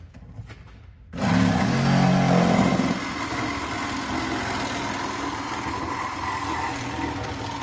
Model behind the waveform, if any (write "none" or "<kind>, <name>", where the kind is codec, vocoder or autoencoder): none